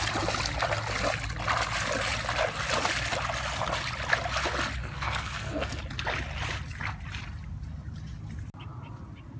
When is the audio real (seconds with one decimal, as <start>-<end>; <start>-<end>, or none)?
0.0-4.8; 5.8-9.4